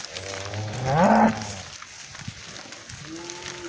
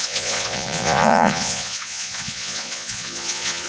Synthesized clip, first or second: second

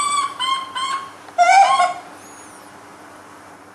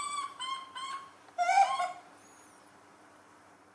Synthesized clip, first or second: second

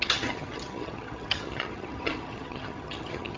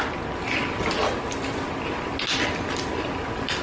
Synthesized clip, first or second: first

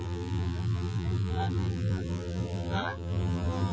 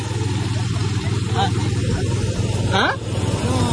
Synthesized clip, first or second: first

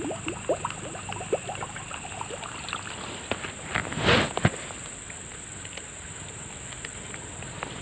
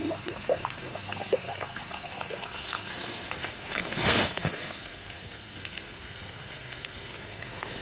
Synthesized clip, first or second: second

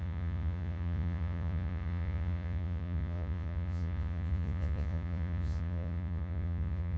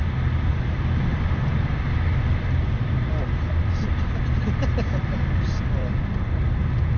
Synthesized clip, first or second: first